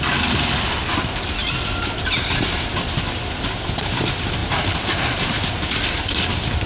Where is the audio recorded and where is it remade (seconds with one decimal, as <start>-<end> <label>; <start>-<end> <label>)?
0.0-4.4 recorded; 4.4-5.6 remade; 5.6-6.7 recorded